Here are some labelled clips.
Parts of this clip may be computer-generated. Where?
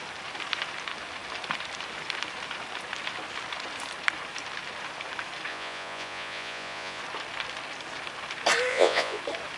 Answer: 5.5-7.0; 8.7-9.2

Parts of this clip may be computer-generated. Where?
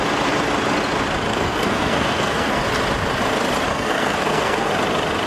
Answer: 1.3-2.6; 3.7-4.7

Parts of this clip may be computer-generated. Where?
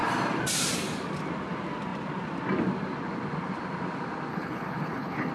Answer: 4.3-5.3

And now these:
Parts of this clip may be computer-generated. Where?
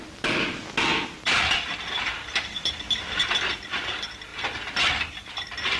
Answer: none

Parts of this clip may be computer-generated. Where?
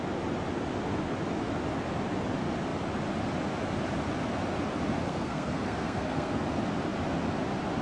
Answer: 5.0-6.4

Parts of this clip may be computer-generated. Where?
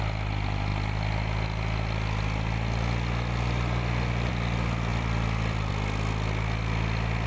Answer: 4.9-5.7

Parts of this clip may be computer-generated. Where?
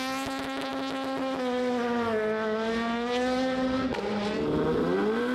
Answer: none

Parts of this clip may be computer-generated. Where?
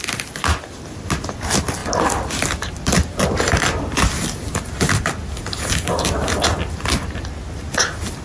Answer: none